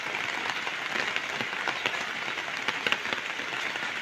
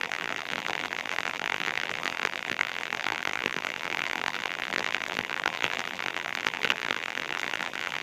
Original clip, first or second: first